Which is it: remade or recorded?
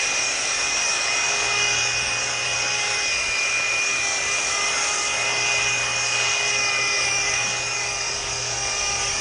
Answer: remade